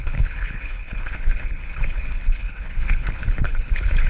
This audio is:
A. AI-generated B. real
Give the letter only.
A